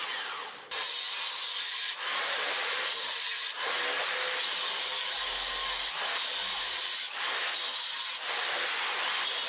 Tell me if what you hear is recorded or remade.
recorded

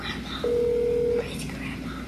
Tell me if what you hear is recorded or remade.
recorded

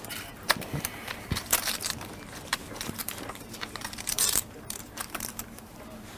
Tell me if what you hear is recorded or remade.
remade